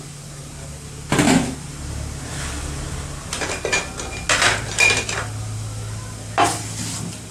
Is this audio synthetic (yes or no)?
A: no